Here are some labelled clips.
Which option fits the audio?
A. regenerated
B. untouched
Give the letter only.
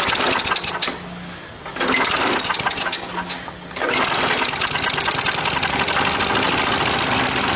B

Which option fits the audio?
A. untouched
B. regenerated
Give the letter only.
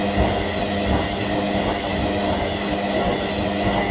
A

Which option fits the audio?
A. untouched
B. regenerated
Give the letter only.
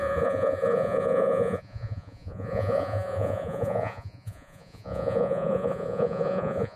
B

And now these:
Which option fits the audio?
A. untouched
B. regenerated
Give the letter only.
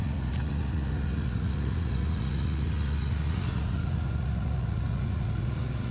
B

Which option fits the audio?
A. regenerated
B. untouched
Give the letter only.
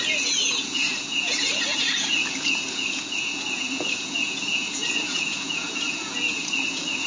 A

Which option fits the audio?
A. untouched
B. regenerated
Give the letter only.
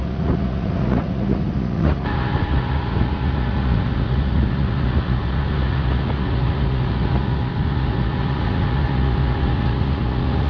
B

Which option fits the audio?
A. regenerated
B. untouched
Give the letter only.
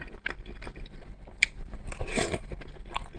B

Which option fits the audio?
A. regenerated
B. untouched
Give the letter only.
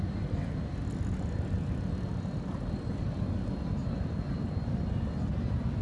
B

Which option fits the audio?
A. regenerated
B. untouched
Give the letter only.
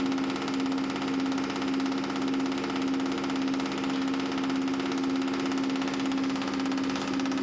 B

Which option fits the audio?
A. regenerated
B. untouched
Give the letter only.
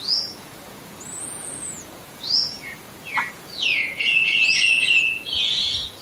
A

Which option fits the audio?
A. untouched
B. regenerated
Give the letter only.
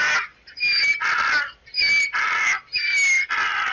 A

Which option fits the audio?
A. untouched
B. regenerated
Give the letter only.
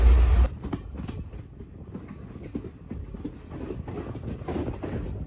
A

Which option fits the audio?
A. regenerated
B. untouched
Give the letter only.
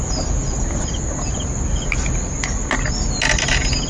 B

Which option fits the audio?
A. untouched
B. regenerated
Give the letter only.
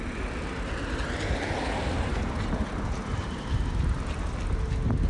A